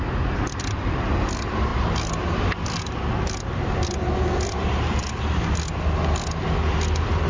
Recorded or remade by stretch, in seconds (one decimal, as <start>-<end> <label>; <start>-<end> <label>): 0.0-7.3 recorded